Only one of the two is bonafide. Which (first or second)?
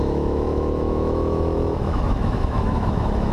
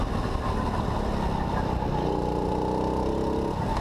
second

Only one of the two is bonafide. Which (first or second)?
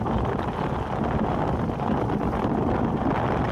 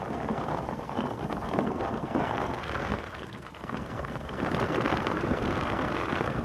first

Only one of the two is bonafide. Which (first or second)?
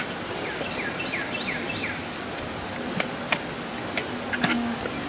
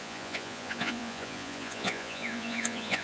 first